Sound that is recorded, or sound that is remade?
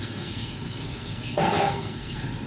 remade